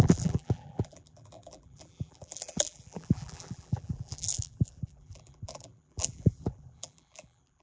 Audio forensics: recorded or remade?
remade